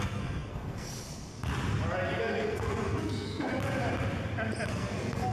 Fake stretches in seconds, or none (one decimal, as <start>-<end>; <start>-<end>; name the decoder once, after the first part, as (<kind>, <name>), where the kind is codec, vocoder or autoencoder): 0.0-1.5 (codec, SNAC); 2.2-3.5; 4.7-5.3